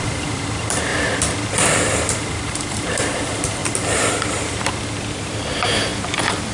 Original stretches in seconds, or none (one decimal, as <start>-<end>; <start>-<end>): 0.9-2.1; 3.6-5.1